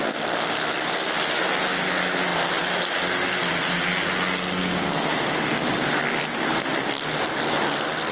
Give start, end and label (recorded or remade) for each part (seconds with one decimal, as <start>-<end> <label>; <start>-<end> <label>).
0.0-8.1 recorded

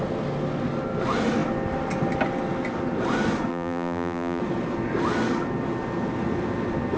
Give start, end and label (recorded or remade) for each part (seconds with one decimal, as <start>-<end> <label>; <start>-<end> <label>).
0.0-3.5 recorded; 3.5-4.4 remade; 4.4-7.0 recorded

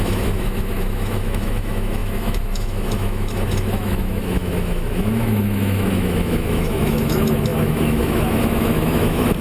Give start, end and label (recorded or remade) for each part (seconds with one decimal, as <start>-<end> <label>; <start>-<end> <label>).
0.0-9.4 remade

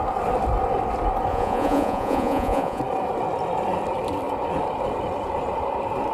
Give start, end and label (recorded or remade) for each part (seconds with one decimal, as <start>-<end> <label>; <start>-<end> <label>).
0.0-1.3 recorded; 1.3-2.8 remade; 2.8-6.1 recorded

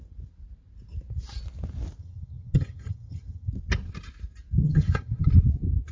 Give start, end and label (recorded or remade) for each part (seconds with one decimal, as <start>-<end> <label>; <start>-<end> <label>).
0.0-2.0 recorded; 2.0-3.5 remade; 3.5-4.6 recorded; 4.6-5.3 remade; 5.3-5.9 recorded

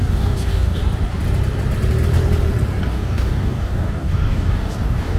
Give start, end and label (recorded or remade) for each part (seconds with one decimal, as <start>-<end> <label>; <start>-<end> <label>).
0.0-0.8 remade; 0.8-2.9 recorded; 2.9-5.2 remade